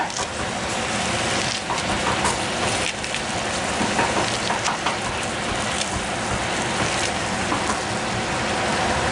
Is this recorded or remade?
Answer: recorded